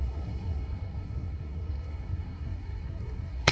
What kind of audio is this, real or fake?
fake